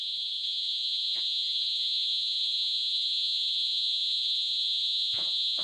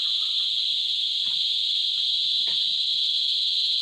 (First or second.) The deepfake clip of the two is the first